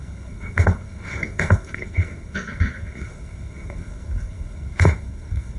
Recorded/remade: remade